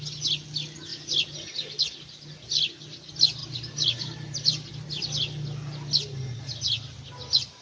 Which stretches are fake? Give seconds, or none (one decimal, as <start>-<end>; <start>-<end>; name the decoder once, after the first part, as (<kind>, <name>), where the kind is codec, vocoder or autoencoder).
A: 3.4-4.7 (vocoder, BigVGAN v2)